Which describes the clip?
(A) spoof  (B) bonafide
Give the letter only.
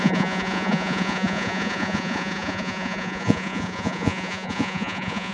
A